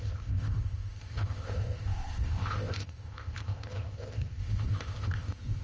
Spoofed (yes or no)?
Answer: yes